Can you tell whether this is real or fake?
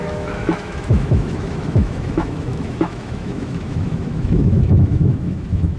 fake